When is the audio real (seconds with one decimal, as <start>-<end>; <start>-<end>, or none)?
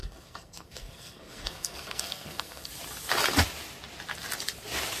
2.7-5.0